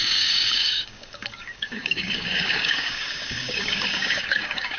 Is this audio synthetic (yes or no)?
yes